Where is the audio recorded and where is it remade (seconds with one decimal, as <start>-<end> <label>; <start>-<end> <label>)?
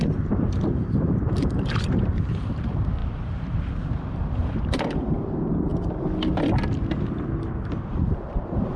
0.0-5.7 remade; 5.7-7.9 recorded; 7.9-8.8 remade